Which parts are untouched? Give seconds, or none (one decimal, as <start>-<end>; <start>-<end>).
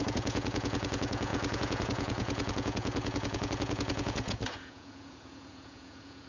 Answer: none